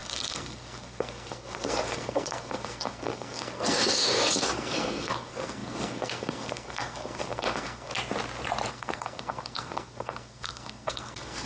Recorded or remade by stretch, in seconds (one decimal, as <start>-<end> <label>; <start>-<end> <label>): 0.0-7.9 remade; 7.9-8.7 recorded; 8.7-11.5 remade